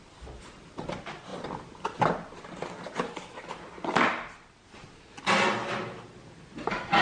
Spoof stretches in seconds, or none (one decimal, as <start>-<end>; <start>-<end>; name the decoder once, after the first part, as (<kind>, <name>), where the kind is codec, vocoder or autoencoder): none